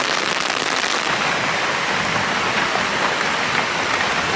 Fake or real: real